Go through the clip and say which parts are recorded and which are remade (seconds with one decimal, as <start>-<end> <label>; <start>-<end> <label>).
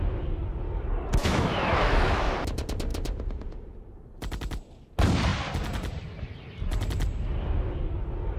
0.0-1.2 recorded; 1.2-2.3 remade; 2.3-8.4 recorded